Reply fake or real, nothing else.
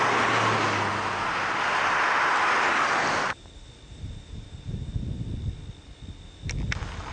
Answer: real